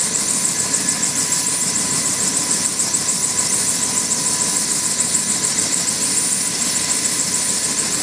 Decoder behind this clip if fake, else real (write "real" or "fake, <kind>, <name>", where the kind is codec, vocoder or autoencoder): real